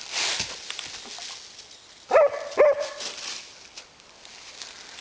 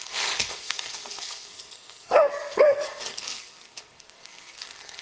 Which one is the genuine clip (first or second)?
first